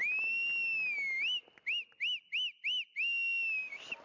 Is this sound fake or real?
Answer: real